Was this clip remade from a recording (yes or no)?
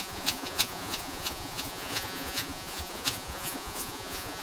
yes